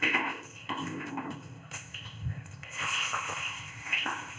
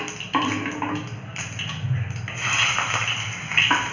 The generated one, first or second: first